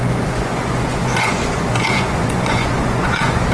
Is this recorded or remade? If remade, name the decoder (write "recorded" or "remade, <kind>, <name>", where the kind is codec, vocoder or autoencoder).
remade, vocoder, Vocos